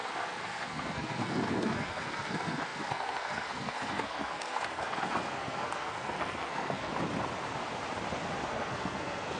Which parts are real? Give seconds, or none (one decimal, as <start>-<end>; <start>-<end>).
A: 6.9-8.5